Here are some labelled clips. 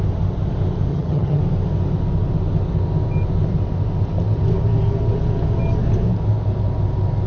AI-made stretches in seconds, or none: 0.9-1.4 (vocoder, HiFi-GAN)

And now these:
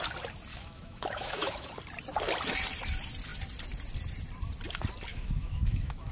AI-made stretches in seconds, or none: 0.5-1.7 (autoencoder, DAC-VAE); 5.1-6.1

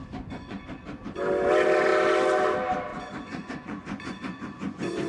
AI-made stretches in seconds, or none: 0.0-0.7 (vocoder, Vocos); 2.9-5.1

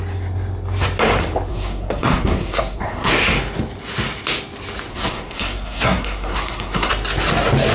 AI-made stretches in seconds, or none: 1.5-3.1 (codec, SNAC); 4.9-6.9

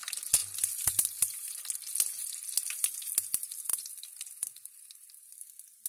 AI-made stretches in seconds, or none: 0.4-1.5 (vocoder, BigVGAN v2); 3.7-5.5

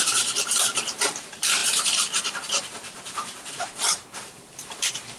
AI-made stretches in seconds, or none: 0.0-5.2 (vocoder, BigVGAN v2)